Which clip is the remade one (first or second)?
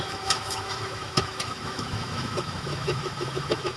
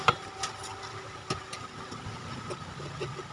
first